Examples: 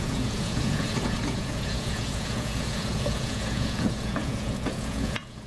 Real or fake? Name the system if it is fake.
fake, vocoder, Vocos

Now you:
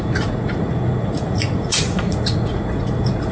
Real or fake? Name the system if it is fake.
fake, vocoder, Vocos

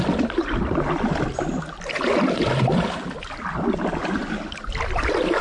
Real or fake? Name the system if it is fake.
real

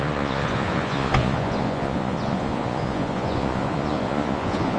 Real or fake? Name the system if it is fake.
fake, vocoder, Vocos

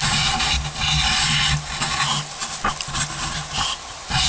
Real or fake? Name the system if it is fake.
real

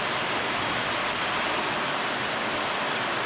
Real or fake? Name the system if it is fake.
real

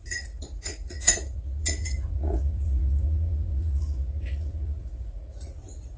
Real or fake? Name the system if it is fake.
fake, vocoder, Vocos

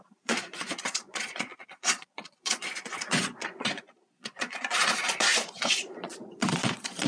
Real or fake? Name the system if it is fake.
fake, vocoder, Vocos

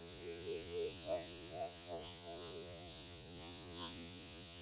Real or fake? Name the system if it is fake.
fake, vocoder, Vocos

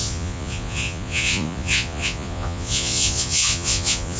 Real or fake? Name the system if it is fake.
fake, vocoder, Vocos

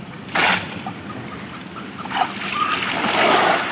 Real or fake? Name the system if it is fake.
real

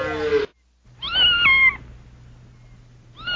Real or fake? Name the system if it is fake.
real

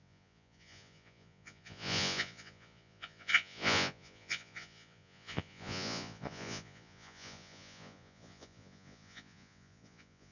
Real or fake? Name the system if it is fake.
fake, vocoder, Vocos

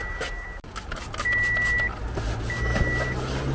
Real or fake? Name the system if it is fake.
real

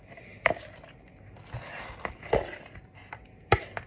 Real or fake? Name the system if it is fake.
real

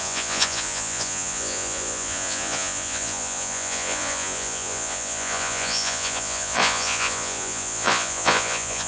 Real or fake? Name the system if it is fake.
fake, vocoder, Vocos